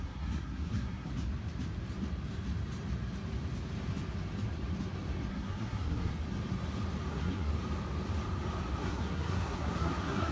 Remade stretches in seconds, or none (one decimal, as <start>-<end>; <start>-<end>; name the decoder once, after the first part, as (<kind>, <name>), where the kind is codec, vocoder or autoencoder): 0.0-1.1 (codec, SNAC); 5.3-6.1; 7.1-7.5; 8.8-10.3